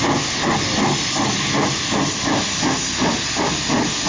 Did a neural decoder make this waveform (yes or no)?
no